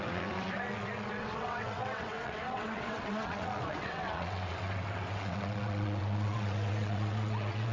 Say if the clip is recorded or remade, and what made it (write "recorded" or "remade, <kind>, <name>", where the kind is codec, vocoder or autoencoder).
remade, vocoder, WaveNeXt